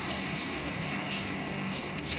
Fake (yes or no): yes